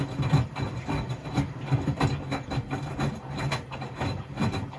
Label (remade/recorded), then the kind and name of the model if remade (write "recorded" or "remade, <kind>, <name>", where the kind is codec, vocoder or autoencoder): recorded